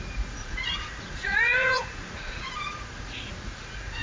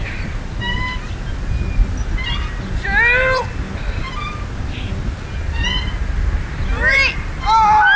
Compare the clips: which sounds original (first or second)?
second